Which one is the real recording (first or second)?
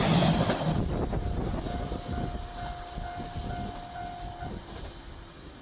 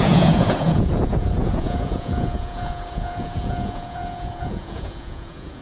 first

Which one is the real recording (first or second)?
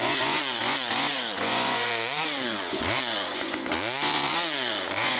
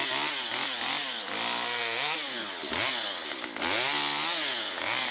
second